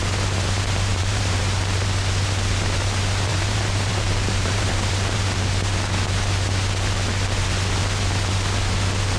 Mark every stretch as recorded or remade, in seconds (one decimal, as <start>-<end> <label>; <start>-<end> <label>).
0.0-0.9 recorded; 0.9-1.4 remade; 1.4-3.3 recorded; 3.3-5.2 remade; 5.2-9.2 recorded